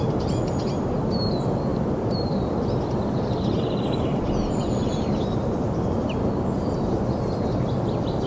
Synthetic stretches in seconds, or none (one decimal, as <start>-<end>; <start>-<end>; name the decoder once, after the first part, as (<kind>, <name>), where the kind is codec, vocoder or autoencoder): 1.7-2.7 (vocoder, BigVGAN v2); 4.1-5.1